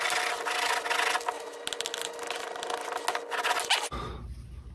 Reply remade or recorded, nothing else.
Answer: recorded